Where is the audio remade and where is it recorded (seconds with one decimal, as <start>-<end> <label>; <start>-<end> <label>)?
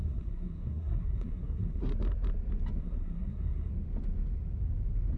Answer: 0.0-1.9 remade; 1.9-2.8 recorded; 2.8-3.7 remade; 3.7-5.2 recorded